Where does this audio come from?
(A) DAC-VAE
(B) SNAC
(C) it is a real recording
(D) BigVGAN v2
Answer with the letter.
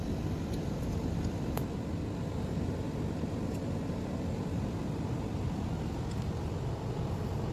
C